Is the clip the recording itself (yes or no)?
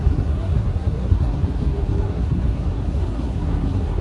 no